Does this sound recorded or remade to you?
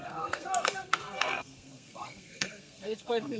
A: remade